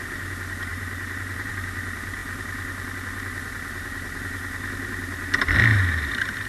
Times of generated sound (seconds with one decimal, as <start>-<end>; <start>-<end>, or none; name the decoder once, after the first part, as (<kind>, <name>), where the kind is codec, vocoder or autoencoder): 0.7-1.5 (vocoder, BigVGAN v2)

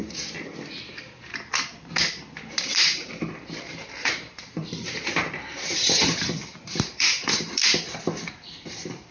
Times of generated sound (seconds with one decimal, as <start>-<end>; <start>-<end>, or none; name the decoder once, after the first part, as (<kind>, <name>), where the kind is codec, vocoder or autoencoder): 2.5-9.1 (vocoder, BigVGAN v2)

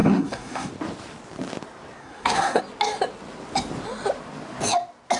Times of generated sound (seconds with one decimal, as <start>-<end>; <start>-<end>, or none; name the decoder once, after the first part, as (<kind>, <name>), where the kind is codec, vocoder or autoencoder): 0.0-0.7 (codec, SNAC); 2.0-2.6